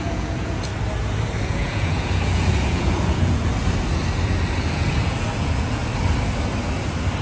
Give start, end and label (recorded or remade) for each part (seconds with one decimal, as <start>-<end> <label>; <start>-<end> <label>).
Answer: 0.0-0.7 remade; 0.7-1.4 recorded; 1.4-3.5 remade; 3.5-4.6 recorded; 4.6-5.8 remade; 5.8-7.2 recorded